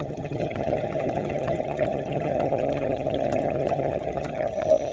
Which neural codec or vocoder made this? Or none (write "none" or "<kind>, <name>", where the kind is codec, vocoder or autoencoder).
vocoder, HiFi-GAN